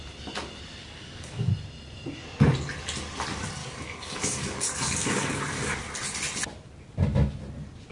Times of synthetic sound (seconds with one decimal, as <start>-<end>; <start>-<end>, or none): 0.8-1.5; 3.6-5.8